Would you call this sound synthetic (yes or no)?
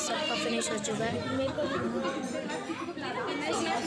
no